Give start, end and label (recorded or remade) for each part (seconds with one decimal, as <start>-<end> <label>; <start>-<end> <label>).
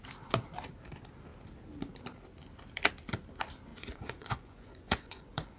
0.0-3.7 recorded; 3.7-5.6 remade